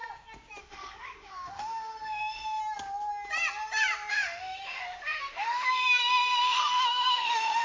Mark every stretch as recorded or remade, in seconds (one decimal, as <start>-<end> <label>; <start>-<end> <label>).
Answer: 0.0-0.6 recorded; 0.6-2.6 remade; 2.6-4.1 recorded; 4.1-7.6 remade